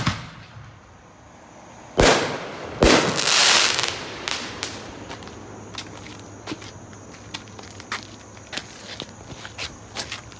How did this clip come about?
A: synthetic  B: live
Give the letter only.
B